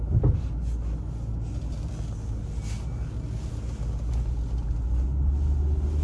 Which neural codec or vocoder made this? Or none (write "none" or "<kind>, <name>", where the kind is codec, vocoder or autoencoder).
none